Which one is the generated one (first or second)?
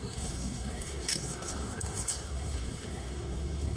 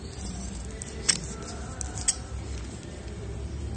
first